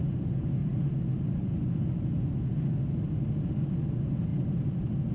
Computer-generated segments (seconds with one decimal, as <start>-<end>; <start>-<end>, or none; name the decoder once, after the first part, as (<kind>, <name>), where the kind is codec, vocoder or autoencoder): none